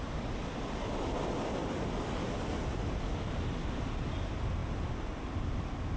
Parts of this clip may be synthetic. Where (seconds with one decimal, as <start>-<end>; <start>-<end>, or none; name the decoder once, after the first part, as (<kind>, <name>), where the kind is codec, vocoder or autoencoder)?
none